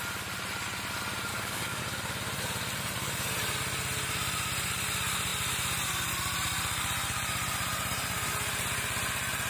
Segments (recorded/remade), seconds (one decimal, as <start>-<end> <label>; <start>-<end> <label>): 0.0-1.3 recorded; 1.3-1.8 remade; 1.8-9.5 recorded